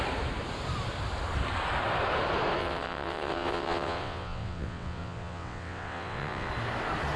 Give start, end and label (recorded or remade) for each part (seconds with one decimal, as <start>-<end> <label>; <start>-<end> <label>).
0.0-2.6 recorded; 2.6-6.5 remade; 6.5-7.2 recorded